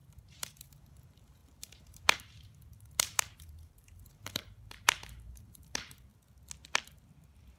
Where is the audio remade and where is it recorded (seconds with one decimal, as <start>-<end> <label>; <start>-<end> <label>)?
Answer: 0.0-6.1 remade; 6.1-7.6 recorded

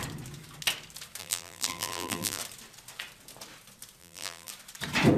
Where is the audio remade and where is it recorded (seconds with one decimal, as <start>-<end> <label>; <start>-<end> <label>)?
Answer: 0.0-1.2 recorded; 1.2-2.4 remade; 2.4-4.0 recorded; 4.0-4.5 remade; 4.5-5.2 recorded

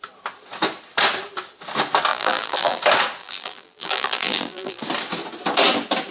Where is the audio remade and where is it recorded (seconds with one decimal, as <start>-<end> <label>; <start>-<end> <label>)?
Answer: 0.0-2.1 recorded; 2.1-2.8 remade; 2.8-3.2 recorded; 3.2-4.8 remade; 4.8-6.1 recorded